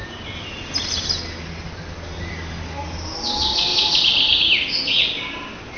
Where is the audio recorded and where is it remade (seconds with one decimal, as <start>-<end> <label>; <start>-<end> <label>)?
0.0-5.8 recorded

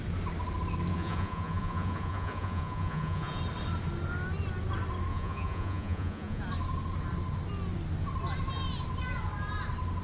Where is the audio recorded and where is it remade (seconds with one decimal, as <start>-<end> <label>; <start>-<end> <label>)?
0.0-0.9 recorded; 0.9-3.4 remade; 3.4-5.1 recorded; 5.1-6.4 remade; 6.4-10.0 recorded

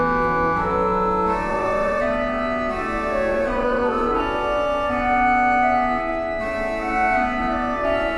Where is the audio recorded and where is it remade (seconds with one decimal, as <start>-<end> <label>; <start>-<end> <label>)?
0.0-1.5 recorded; 1.5-2.0 remade; 2.0-3.3 recorded; 3.3-4.2 remade; 4.2-8.2 recorded

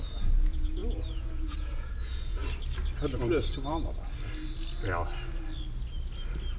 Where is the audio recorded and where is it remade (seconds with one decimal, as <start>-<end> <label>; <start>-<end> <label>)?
0.0-2.4 remade; 2.4-6.6 recorded

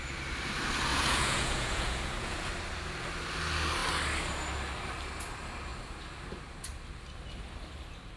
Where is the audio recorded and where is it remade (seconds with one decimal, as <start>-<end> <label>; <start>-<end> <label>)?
0.0-0.9 recorded; 0.9-2.5 remade; 2.5-8.2 recorded

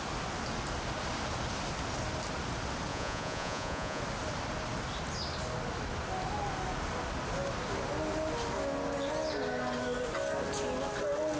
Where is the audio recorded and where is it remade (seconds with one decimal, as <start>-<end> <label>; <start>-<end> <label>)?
0.0-2.9 recorded; 2.9-4.0 remade; 4.0-11.4 recorded

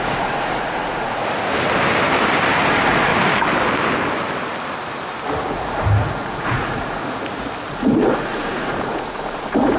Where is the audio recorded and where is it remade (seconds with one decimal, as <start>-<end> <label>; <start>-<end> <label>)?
0.0-1.2 remade; 1.2-2.7 recorded; 2.7-3.1 remade; 3.1-5.5 recorded; 5.5-7.0 remade; 7.0-7.7 recorded; 7.7-9.8 remade